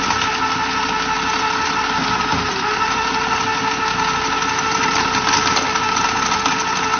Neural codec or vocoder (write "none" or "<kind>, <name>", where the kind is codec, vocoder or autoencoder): none